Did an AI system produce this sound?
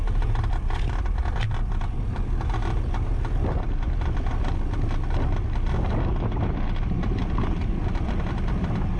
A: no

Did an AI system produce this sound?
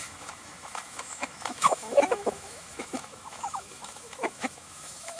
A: yes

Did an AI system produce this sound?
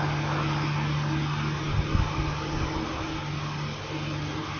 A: no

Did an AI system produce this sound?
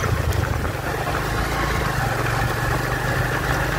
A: no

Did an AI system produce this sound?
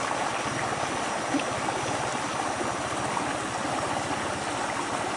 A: no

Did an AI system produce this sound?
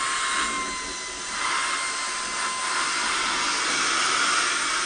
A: no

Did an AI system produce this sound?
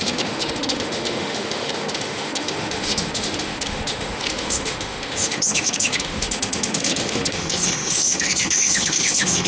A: yes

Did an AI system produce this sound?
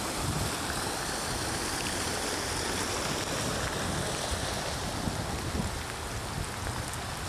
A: no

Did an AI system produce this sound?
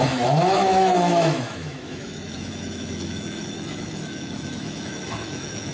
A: yes